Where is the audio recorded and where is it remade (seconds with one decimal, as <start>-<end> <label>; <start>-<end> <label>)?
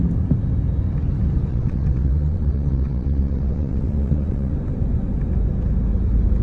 0.0-1.5 recorded; 1.5-4.5 remade; 4.5-6.4 recorded